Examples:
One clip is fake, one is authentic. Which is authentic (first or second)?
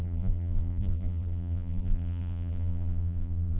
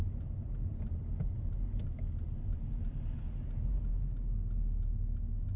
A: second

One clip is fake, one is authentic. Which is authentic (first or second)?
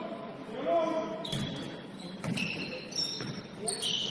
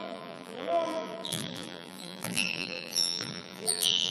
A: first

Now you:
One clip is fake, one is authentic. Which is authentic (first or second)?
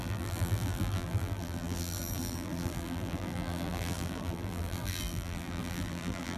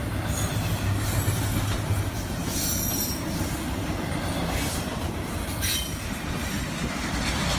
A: second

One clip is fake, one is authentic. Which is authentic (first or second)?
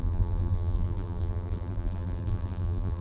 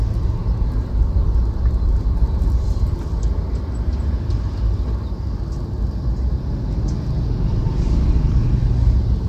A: second